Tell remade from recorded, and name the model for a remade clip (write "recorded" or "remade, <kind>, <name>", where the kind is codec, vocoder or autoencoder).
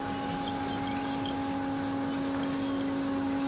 recorded